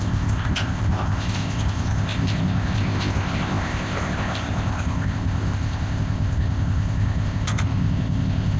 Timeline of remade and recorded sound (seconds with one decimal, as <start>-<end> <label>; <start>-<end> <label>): 0.0-8.6 remade